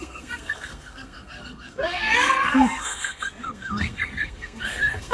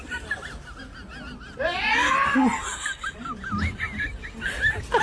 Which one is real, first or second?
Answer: second